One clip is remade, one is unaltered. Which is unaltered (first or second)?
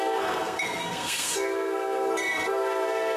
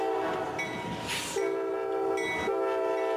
second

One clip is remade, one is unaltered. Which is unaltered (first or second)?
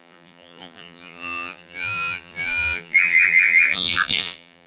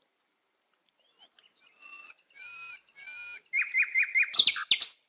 second